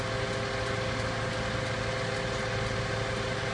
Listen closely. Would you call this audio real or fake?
real